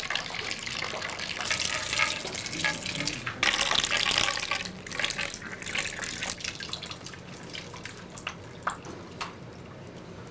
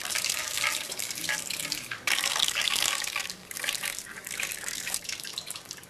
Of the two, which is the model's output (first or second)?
second